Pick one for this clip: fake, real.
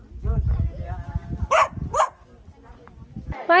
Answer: real